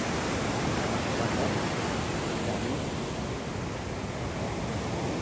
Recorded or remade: recorded